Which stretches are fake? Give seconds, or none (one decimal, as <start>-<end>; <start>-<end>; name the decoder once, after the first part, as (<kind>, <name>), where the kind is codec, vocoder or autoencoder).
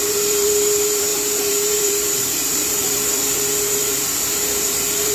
0.0-5.1 (vocoder, BigVGAN v2)